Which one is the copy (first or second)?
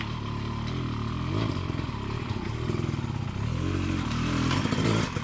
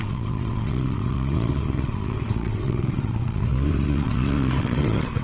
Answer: second